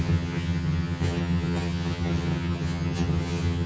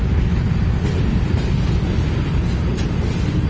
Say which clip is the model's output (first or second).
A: first